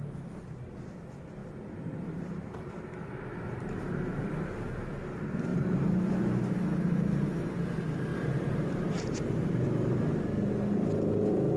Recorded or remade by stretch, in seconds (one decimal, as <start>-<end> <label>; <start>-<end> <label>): 0.0-1.4 recorded; 1.4-2.7 remade; 2.7-3.3 recorded; 3.3-4.3 remade; 4.3-5.5 recorded; 5.5-6.1 remade; 6.1-8.1 recorded; 8.1-10.1 remade; 10.1-11.6 recorded